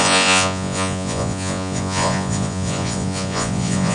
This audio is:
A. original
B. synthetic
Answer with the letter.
B